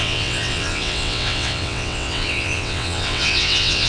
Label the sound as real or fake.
fake